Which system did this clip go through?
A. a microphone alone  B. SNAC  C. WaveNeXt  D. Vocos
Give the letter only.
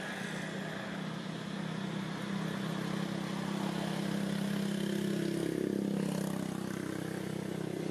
A